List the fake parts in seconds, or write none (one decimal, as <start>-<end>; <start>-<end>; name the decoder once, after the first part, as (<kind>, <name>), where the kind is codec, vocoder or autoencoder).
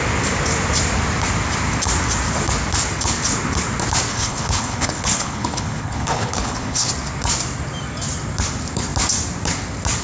4.1-6.9 (codec, HILCodec)